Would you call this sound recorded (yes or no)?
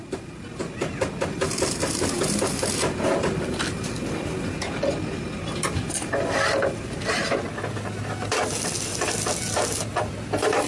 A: yes